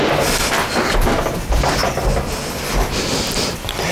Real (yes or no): yes